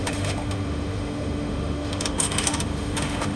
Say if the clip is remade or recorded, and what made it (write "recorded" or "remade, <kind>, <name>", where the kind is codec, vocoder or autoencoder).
remade, autoencoder, DAC-VAE